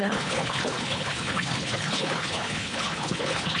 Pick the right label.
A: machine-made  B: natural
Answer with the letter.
A